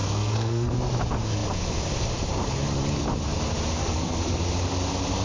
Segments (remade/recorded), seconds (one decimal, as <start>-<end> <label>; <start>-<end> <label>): 0.0-0.7 remade; 0.7-3.8 recorded; 3.8-4.4 remade; 4.4-5.2 recorded